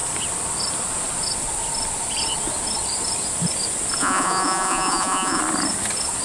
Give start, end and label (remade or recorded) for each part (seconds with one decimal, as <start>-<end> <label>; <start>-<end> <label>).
0.0-4.0 recorded; 4.0-5.4 remade; 5.4-6.2 recorded